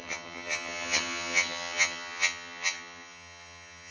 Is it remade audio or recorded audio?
remade